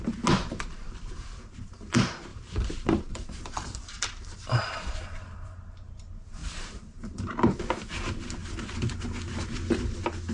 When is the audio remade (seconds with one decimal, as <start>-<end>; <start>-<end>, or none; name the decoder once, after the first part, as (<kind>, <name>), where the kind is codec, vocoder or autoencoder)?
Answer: 0.7-1.9 (vocoder, BigVGAN v2); 2.3-4.9; 6.4-7.2